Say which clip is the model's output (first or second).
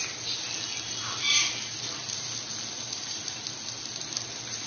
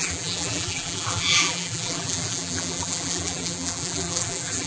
second